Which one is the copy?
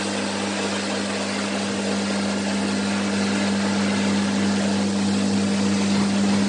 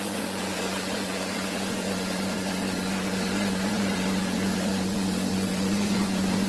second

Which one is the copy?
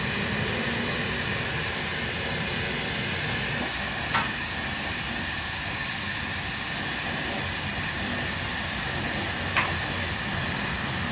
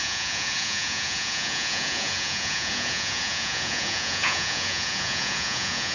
second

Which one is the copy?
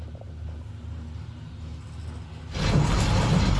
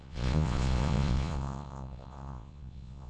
second